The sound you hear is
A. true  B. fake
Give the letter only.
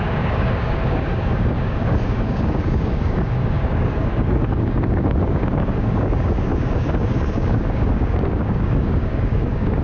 B